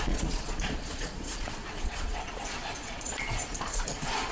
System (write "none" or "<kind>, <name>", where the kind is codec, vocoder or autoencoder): vocoder, Vocos